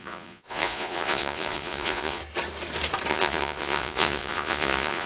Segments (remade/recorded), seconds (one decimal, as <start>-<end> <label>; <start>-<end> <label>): 0.0-2.2 remade; 2.2-3.1 recorded; 3.1-5.1 remade